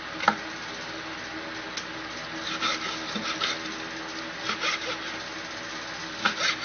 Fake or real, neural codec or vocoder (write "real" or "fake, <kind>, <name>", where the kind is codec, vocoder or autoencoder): real